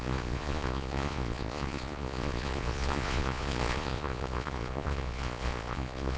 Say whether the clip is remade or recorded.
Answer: remade